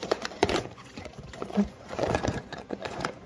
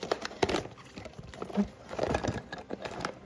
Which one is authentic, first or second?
second